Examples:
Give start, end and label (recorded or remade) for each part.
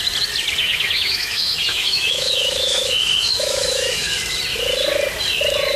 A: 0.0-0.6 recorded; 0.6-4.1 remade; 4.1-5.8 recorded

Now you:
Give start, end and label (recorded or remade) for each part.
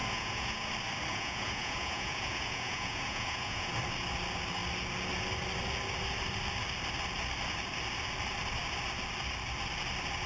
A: 0.0-0.7 remade; 0.7-1.1 recorded; 1.1-3.7 remade; 3.7-10.3 recorded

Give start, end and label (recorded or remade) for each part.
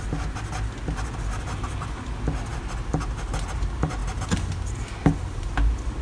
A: 0.0-6.0 recorded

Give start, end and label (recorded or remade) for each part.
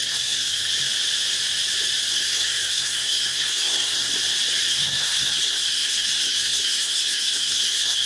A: 0.0-0.7 remade; 0.7-2.1 recorded; 2.1-4.1 remade; 4.1-4.7 recorded; 4.7-8.1 remade